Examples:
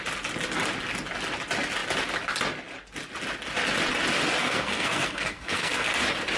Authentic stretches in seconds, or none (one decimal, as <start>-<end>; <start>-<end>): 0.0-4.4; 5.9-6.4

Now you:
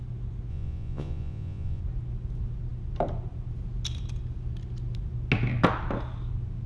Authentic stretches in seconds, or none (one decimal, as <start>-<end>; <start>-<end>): 0.0-0.5; 1.8-6.7

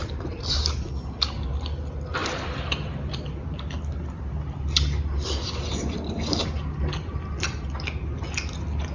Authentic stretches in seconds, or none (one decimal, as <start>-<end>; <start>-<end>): 0.9-2.2; 3.2-8.9

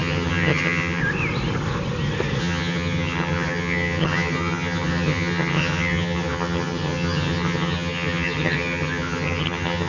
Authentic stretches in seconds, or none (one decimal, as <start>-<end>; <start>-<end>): 1.0-2.4